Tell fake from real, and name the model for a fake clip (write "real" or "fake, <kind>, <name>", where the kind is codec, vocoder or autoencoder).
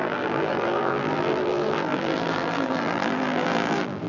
fake, vocoder, BigVGAN v2